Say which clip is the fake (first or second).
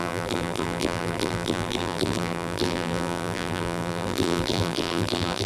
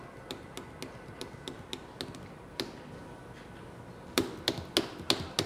first